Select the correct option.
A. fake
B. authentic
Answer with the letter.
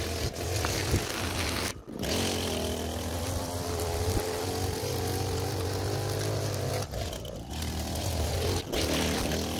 B